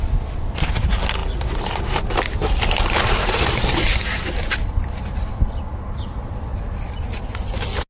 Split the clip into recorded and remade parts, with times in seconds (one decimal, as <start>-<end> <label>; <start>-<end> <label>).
0.0-7.9 recorded